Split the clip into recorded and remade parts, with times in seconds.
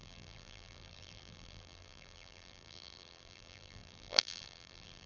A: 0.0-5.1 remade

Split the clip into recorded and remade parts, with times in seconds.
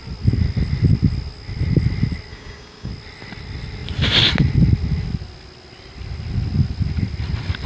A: 0.0-2.3 recorded; 2.3-2.9 remade; 2.9-7.7 recorded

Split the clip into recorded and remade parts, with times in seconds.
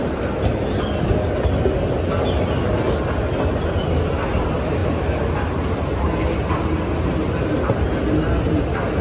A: 0.0-9.0 recorded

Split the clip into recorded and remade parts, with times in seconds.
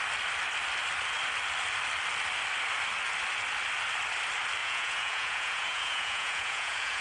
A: 0.0-4.6 recorded; 4.6-7.0 remade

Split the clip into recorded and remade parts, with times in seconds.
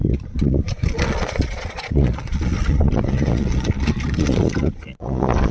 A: 0.0-5.5 remade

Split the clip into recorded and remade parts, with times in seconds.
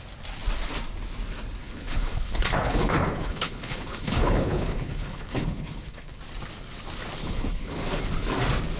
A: 0.0-1.6 recorded; 1.6-6.2 remade; 6.2-7.2 recorded; 7.2-8.0 remade; 8.0-8.8 recorded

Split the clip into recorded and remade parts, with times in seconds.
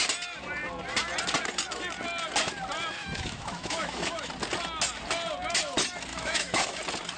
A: 0.0-3.0 recorded; 3.0-4.3 remade; 4.3-6.1 recorded; 6.1-6.8 remade; 6.8-7.2 recorded